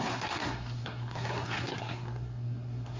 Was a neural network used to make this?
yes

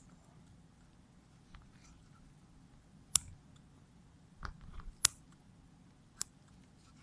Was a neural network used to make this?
no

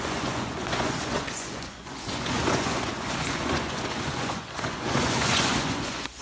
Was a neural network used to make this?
yes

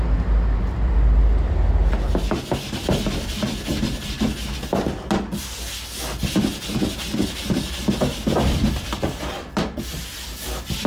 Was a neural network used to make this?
no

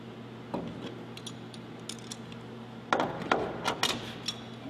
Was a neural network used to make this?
no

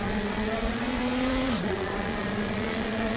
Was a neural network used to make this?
yes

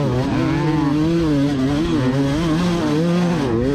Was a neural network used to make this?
no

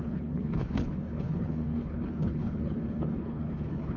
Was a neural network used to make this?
yes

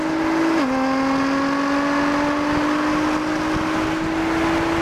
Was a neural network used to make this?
no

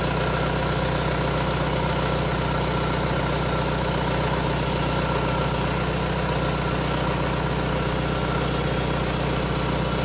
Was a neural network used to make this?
no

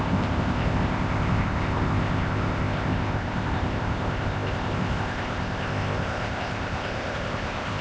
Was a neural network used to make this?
yes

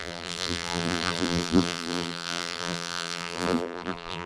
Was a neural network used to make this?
yes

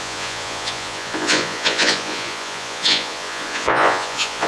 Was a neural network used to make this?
yes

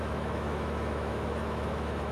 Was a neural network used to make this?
yes